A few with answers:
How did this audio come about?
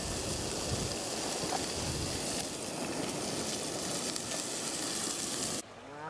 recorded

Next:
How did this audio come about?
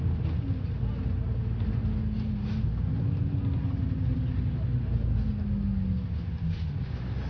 recorded